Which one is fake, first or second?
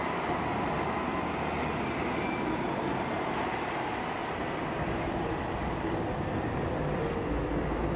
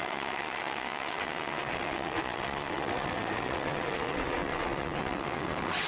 second